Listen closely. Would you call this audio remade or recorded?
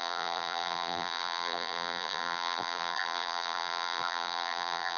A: remade